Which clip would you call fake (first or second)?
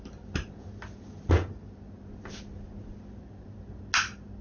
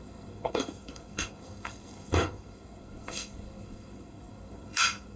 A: second